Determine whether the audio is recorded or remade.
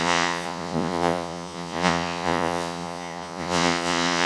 remade